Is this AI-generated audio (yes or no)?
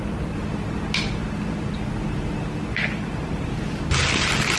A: no